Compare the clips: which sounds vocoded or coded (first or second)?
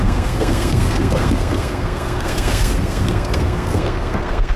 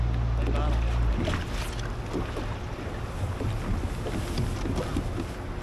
first